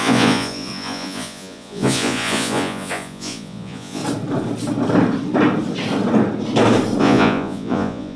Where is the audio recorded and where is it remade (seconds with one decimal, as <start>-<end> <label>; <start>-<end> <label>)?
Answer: 0.0-4.0 remade; 4.0-7.0 recorded; 7.0-8.2 remade